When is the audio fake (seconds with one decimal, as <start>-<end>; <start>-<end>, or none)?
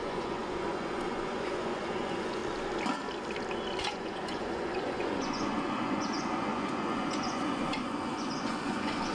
0.0-2.4; 3.9-9.1